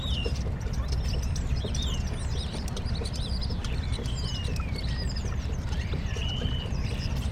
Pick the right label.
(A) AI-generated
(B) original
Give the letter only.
A